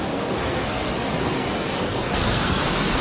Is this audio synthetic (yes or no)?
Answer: yes